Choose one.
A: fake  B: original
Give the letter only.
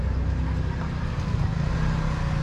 B